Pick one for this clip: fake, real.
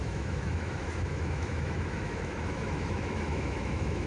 fake